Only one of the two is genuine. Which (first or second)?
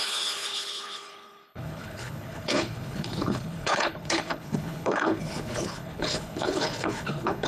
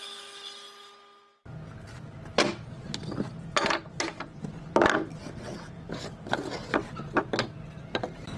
second